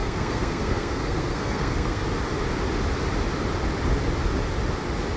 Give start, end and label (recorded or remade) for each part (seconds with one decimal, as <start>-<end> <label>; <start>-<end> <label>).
0.0-2.0 remade; 2.0-5.2 recorded